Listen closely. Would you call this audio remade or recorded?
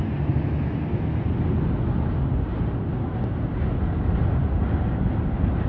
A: recorded